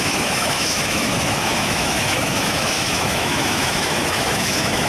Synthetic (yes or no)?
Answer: yes